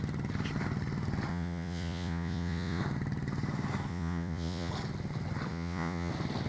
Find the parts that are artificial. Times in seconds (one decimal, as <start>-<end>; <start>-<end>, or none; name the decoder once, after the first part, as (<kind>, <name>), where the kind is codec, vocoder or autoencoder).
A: 1.3-2.8 (vocoder, Vocos); 3.9-4.7; 5.5-6.1